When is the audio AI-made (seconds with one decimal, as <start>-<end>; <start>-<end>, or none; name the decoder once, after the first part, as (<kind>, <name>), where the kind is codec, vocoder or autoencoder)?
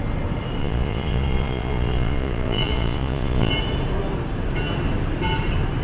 0.6-3.5 (vocoder, Vocos)